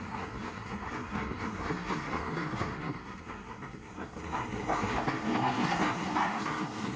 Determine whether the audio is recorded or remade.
remade